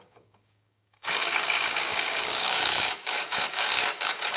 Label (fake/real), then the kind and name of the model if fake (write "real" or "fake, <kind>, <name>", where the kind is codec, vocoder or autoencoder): fake, codec, DAC